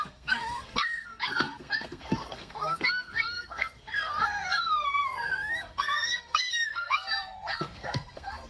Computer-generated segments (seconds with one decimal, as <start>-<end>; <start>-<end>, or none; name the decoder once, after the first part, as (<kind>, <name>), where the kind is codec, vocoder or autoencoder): 0.0-8.5 (codec, SNAC)